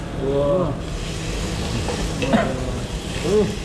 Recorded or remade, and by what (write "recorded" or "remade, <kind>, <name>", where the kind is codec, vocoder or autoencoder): recorded